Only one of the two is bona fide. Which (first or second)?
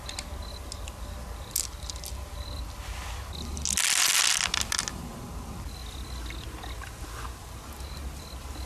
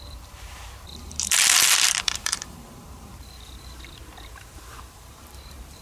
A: first